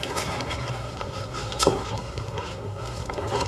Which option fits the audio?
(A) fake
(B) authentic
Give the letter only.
A